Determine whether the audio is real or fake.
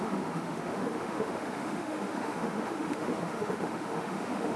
fake